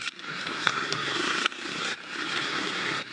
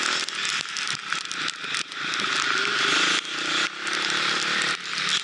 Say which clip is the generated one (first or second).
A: first